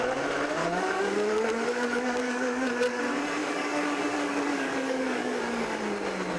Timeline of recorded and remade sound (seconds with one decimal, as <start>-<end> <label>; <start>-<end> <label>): 0.0-0.6 recorded; 0.6-3.0 remade; 3.0-3.4 recorded; 3.4-5.8 remade; 5.8-6.4 recorded